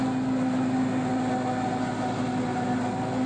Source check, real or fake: real